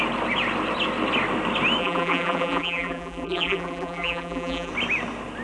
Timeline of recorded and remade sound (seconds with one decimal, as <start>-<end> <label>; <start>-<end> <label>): 0.0-1.8 recorded; 1.8-4.7 remade; 4.7-5.4 recorded